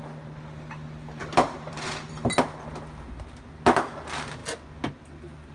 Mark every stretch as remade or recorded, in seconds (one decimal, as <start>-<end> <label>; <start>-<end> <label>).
0.0-1.2 recorded; 1.2-2.4 remade; 2.4-5.5 recorded